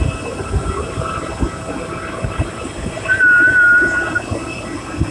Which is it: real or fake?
real